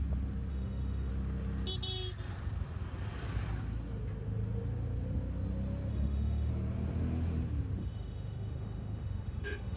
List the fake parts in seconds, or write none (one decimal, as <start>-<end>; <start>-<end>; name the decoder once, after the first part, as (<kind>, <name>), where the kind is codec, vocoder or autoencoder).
0.5-1.1 (autoencoder, DAC-VAE); 5.9-6.5; 7.8-9.8